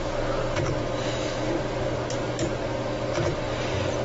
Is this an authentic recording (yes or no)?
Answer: yes